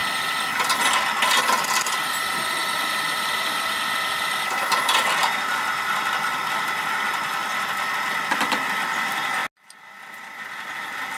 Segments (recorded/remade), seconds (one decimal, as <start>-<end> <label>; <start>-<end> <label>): 0.0-11.2 recorded